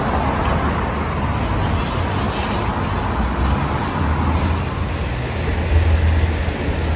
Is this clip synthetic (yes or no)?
no